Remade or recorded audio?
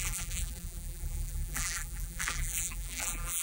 remade